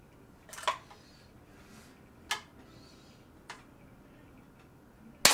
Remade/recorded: recorded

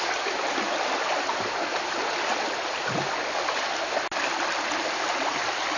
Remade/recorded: recorded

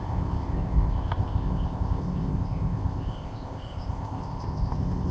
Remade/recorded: remade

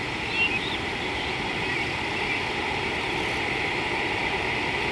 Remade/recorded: recorded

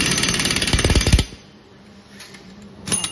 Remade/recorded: remade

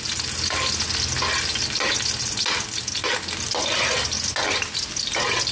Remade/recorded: recorded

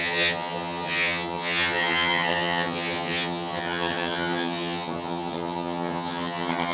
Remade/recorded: remade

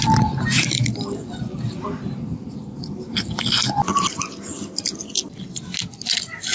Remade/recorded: recorded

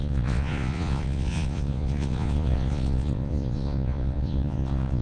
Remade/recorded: remade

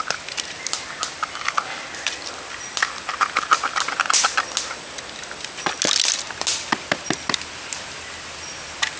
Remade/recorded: recorded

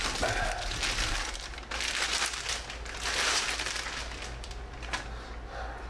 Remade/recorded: recorded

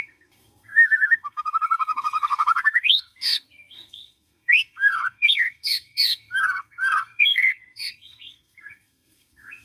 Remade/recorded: remade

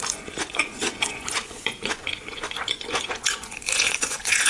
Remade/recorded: remade